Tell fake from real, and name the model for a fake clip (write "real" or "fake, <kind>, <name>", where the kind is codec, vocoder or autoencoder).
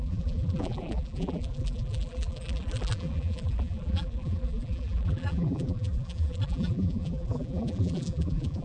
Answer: fake, vocoder, BigVGAN v2